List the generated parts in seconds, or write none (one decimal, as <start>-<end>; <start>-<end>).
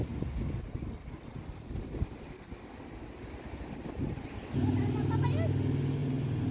none